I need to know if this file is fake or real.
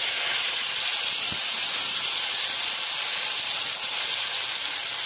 real